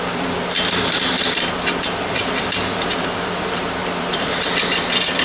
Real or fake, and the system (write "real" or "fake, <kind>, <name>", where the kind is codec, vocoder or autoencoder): fake, vocoder, BigVGAN v2